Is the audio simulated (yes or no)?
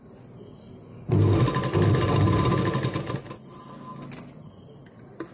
no